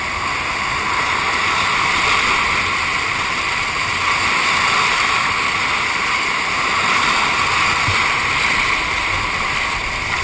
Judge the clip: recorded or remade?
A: recorded